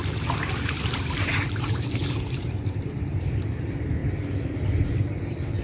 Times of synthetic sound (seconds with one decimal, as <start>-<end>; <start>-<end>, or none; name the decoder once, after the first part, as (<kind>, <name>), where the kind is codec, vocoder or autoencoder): 1.0-3.5 (vocoder, BigVGAN v2)